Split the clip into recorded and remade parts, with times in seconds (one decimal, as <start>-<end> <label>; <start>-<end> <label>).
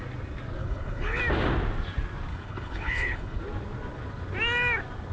0.0-0.6 recorded; 0.6-1.2 remade; 1.2-2.3 recorded; 2.3-3.4 remade; 3.4-5.1 recorded